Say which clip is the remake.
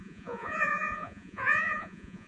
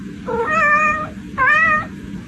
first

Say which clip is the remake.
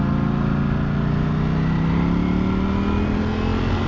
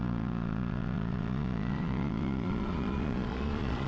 second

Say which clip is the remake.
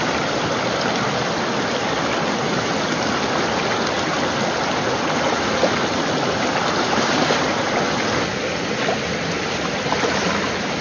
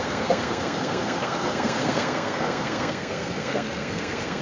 second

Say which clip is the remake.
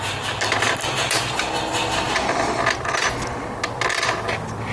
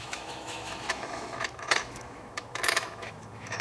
second